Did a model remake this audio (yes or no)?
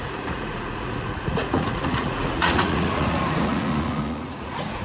yes